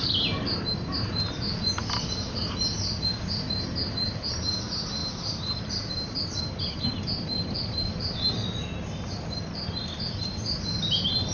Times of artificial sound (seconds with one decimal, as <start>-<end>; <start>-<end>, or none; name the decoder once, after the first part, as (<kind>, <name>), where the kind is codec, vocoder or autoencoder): none